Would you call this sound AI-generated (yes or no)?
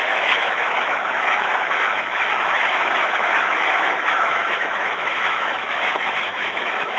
yes